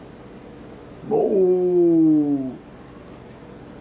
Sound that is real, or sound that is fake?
real